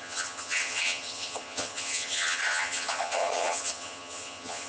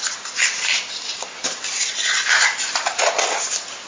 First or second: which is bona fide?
second